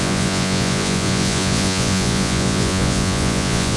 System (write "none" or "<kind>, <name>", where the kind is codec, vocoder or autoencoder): vocoder, Vocos